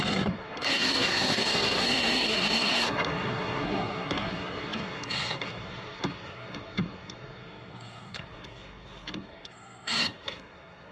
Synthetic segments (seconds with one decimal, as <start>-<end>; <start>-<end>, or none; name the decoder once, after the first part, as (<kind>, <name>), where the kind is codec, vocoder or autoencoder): 0.0-10.9 (codec, SNAC)